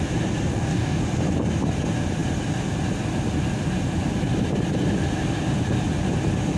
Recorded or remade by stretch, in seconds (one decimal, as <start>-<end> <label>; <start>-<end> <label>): 0.0-0.5 recorded; 0.5-1.0 remade; 1.0-6.6 recorded